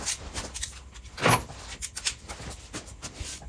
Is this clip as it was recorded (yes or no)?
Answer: yes